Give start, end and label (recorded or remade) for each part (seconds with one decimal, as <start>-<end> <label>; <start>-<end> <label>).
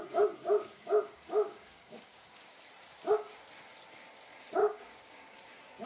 0.0-0.4 recorded; 0.4-2.6 remade; 2.6-4.6 recorded; 4.6-5.3 remade; 5.3-5.9 recorded